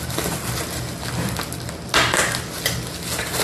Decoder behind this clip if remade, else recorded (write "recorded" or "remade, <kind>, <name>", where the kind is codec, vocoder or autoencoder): recorded